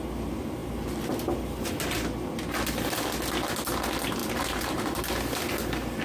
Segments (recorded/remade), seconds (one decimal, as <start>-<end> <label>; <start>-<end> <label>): 0.0-0.6 recorded; 0.6-1.7 remade; 1.7-4.2 recorded; 4.2-5.0 remade; 5.0-6.0 recorded